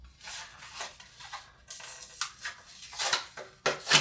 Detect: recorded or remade recorded